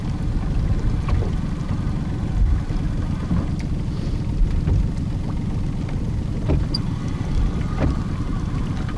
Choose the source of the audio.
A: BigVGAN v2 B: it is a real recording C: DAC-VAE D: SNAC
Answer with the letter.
B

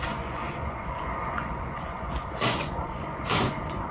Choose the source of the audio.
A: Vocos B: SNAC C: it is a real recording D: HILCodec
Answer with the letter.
A